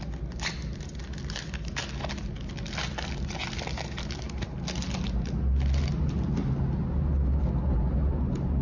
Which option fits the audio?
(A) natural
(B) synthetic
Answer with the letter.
A